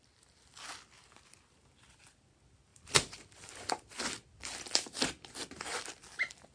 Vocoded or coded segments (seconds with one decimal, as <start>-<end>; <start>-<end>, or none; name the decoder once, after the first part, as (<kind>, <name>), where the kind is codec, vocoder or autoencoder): 2.7-4.1 (vocoder, BigVGAN v2)